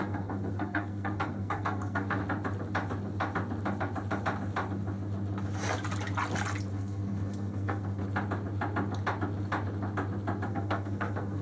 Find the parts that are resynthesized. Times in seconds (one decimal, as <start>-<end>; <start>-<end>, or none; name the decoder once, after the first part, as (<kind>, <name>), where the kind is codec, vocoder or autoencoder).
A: 0.0-2.2 (codec, SNAC); 6.7-8.0; 10.5-11.4